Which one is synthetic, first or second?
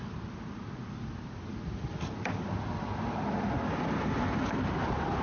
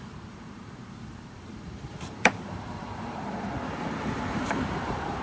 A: second